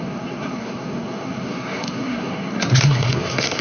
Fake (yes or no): yes